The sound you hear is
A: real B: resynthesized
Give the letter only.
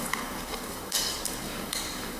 B